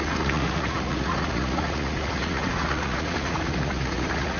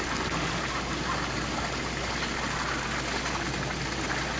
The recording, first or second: second